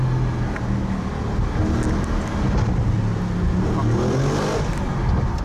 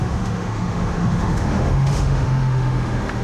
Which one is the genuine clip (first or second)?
first